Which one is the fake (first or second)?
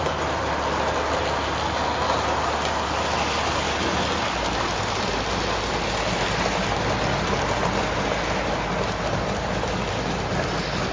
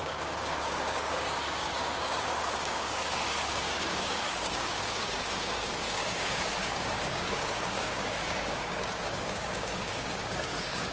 second